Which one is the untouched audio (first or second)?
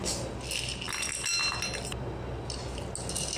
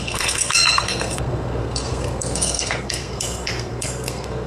first